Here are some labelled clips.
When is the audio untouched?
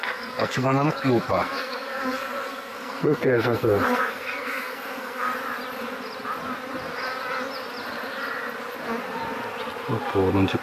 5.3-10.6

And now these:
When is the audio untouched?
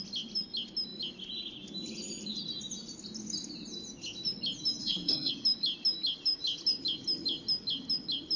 0.0-4.8; 5.3-8.4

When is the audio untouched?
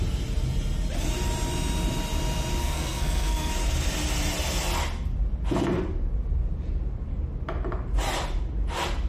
0.0-2.6; 3.5-9.1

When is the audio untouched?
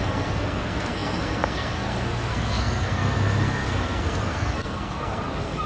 none